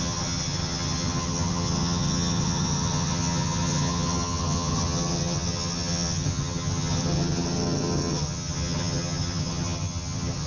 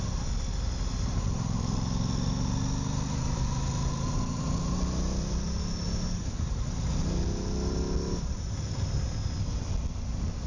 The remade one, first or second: first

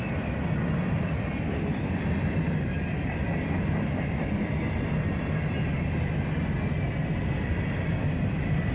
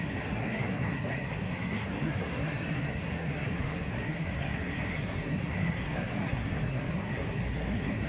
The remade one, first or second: second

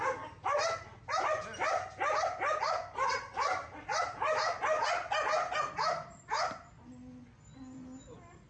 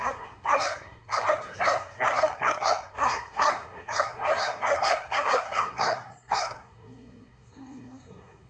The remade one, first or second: second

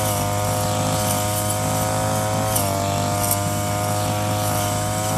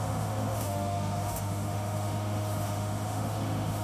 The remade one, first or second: second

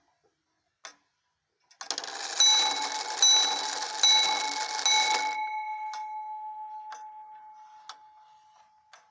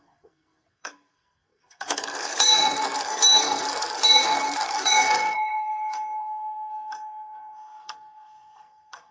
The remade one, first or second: second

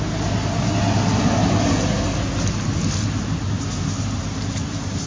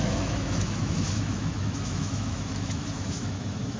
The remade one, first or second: second